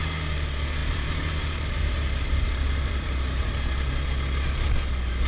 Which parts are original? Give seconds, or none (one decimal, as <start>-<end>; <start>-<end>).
0.0-0.8; 3.5-5.3